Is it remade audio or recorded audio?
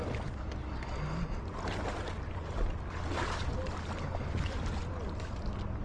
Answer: recorded